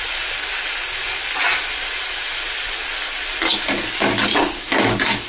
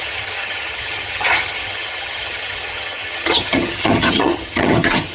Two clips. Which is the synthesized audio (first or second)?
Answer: second